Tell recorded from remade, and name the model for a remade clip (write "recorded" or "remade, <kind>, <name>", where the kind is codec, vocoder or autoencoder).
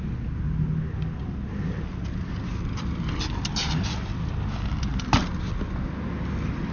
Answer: recorded